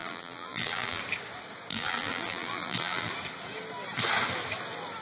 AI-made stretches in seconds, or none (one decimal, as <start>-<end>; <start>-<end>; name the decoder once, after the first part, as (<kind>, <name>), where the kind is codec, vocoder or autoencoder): 0.0-1.0 (vocoder, BigVGAN v2); 1.7-3.1